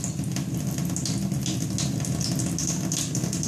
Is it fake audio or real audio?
real